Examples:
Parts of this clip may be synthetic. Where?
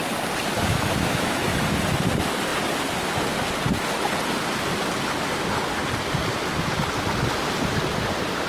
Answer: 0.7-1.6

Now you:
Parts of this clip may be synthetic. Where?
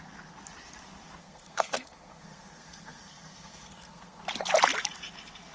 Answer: 1.2-4.2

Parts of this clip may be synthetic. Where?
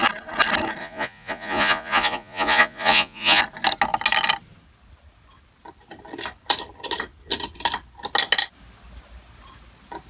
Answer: 0.8-3.4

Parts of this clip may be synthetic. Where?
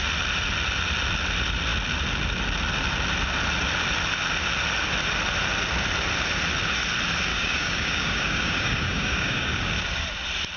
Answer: 7.3-9.7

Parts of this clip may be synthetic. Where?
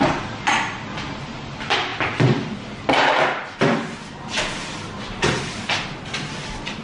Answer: none